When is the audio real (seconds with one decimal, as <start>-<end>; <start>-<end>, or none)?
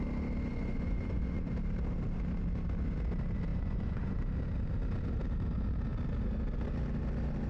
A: 0.0-0.5; 1.5-3.5; 4.2-7.5